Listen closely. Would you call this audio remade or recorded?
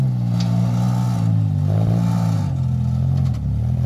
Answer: recorded